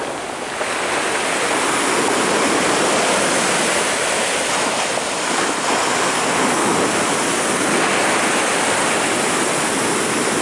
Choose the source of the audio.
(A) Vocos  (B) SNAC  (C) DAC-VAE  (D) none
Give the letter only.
D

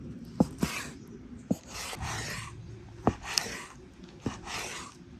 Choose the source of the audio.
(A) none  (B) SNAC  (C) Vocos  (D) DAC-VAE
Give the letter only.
A